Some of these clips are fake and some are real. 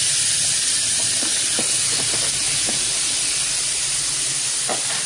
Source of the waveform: real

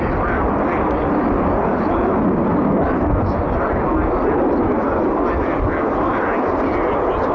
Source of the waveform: real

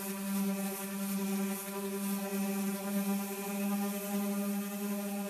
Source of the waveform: real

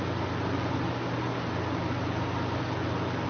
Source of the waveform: real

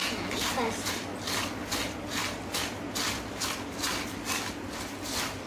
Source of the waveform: real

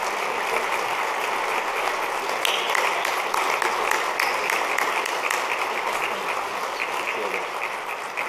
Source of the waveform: real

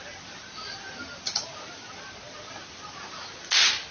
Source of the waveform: real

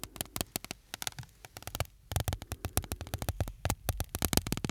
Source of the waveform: real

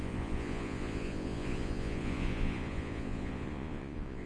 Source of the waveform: fake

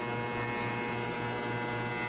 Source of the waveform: real